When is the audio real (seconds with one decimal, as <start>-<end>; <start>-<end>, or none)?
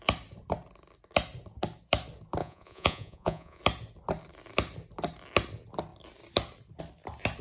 0.0-2.4; 3.6-7.4